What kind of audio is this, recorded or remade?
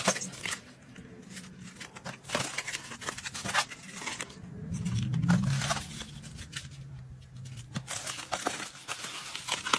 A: recorded